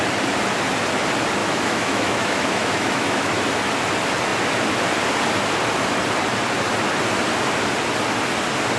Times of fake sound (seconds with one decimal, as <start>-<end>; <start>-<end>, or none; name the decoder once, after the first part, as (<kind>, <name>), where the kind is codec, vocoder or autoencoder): 1.4-3.3 (autoencoder, DAC-VAE)